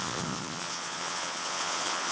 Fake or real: fake